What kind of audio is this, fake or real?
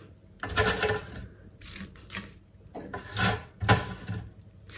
real